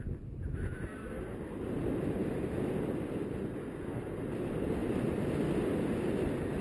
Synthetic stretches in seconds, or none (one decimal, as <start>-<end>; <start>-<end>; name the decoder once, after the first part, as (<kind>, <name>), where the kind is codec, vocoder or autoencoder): none